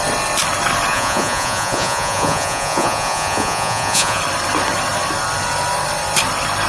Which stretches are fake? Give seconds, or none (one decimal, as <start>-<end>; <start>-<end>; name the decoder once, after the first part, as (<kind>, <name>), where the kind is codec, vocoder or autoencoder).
0.9-4.2 (vocoder, Vocos)